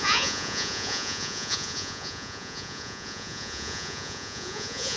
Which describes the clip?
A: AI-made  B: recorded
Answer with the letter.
A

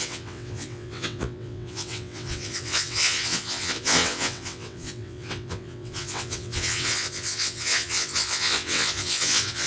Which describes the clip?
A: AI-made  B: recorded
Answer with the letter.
A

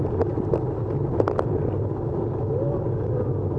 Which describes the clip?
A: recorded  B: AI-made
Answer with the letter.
A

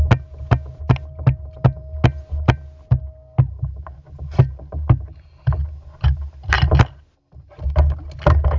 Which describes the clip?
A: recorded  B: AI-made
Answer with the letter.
A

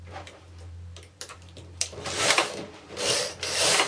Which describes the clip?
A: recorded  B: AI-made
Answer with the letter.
B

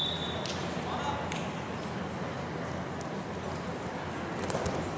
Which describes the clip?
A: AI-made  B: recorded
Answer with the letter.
B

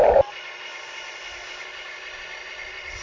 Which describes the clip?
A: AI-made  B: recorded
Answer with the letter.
B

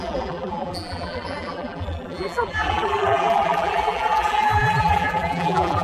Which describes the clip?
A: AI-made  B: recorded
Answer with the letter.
A